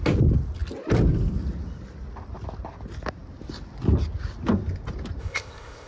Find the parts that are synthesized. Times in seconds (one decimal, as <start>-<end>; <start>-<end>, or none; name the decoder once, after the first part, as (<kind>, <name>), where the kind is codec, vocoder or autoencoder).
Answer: 5.2-5.9 (codec, ZipCodec)